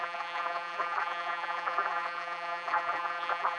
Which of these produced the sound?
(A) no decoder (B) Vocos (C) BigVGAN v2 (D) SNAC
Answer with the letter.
C